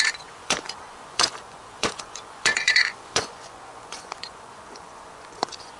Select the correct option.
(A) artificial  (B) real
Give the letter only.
A